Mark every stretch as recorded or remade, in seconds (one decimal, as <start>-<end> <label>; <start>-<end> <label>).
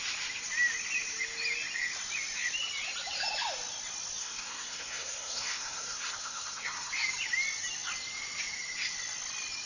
0.0-4.2 recorded; 4.2-6.9 remade; 6.9-9.7 recorded